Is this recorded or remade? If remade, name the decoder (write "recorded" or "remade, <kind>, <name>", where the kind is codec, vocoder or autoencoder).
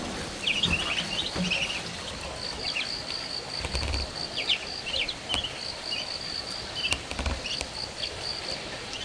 recorded